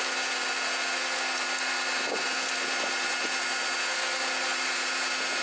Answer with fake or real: real